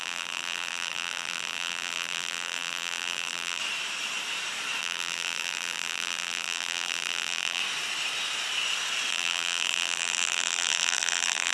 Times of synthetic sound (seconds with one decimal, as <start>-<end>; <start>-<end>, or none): 0.0-3.6; 4.8-7.6; 9.1-11.5